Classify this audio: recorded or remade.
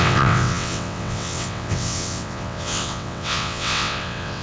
remade